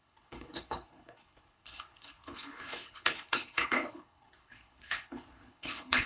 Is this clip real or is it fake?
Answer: fake